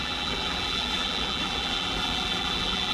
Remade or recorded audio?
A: remade